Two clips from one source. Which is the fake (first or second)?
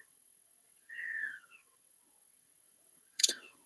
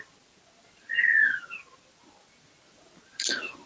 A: first